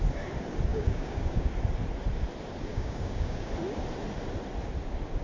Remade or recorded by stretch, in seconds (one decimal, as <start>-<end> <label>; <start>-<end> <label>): 0.0-0.7 recorded; 0.7-1.5 remade; 1.5-2.7 recorded; 2.7-3.5 remade; 3.5-5.2 recorded

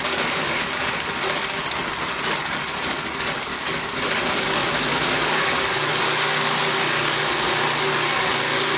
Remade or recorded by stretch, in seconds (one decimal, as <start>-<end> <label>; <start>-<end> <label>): 0.0-8.8 remade